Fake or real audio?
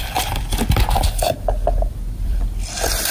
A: fake